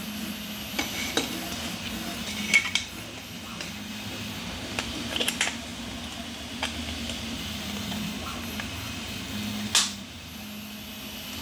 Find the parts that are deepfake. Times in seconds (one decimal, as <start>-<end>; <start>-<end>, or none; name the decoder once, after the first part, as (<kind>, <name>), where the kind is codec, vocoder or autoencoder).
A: none